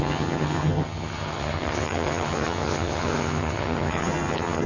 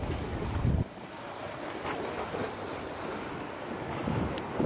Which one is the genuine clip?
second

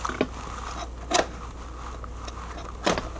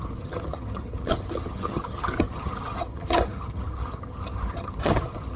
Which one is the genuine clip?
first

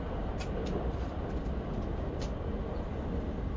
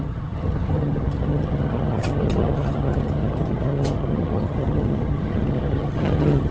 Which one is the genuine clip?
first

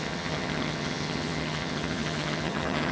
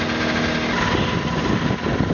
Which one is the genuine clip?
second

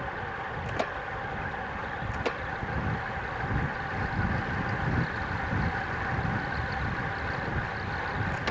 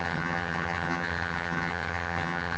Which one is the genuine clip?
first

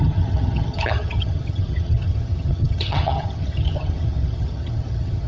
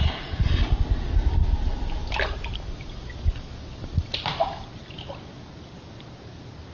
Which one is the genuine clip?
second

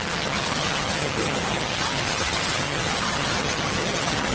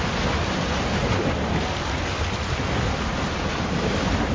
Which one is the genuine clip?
second